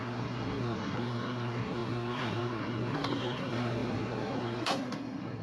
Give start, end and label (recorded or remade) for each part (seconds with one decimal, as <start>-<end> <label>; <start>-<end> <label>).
0.0-5.4 remade

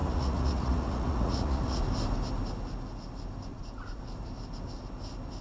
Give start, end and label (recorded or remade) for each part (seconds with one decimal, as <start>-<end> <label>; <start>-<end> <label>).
0.0-1.8 remade; 1.8-3.5 recorded; 3.5-4.0 remade; 4.0-5.4 recorded

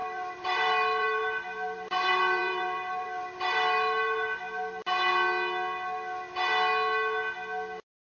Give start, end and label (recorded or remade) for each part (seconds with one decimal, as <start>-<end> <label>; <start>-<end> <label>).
0.0-4.8 remade; 4.8-8.0 recorded

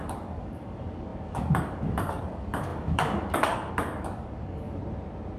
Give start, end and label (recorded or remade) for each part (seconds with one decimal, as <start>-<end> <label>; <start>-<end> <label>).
0.0-4.8 remade; 4.8-5.4 recorded

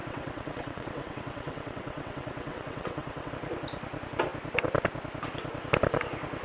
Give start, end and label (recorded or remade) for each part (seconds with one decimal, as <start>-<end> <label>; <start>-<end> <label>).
0.0-3.3 remade; 3.3-6.4 recorded

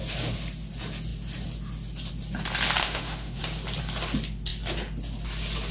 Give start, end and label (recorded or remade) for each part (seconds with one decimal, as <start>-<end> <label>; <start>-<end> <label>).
0.0-2.8 recorded; 2.8-3.4 remade; 3.4-5.7 recorded

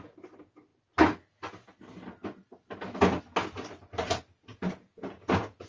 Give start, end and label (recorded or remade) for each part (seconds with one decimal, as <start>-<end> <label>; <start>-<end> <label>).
0.0-4.5 recorded; 4.5-5.7 remade